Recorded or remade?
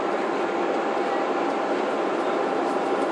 recorded